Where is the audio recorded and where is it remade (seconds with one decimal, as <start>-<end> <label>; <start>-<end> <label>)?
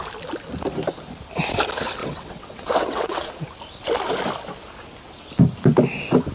0.0-2.0 recorded; 2.0-3.3 remade; 3.3-6.3 recorded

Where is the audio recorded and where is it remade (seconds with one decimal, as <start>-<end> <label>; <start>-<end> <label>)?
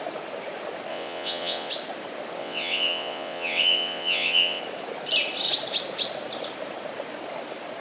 0.0-0.9 recorded; 0.9-1.7 remade; 1.7-2.4 recorded; 2.4-4.6 remade; 4.6-7.8 recorded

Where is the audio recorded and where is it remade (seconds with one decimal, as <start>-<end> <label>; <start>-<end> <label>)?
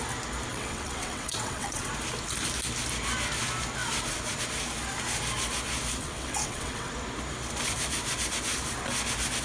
0.0-0.5 recorded; 0.5-1.9 remade; 1.9-6.0 recorded; 6.0-6.9 remade; 6.9-9.4 recorded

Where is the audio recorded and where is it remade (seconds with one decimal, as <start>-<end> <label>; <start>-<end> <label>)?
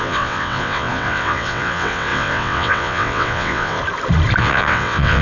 0.0-3.8 remade; 3.8-4.4 recorded; 4.4-5.2 remade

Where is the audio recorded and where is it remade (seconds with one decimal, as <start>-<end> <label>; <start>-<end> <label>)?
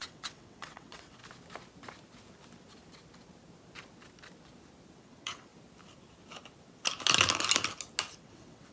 0.0-1.2 remade; 1.2-5.0 recorded; 5.0-5.5 remade; 5.5-8.2 recorded; 8.2-8.7 remade